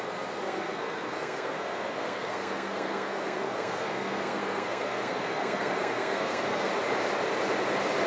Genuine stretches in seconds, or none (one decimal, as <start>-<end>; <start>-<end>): 6.7-8.1